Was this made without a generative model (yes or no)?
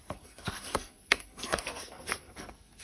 no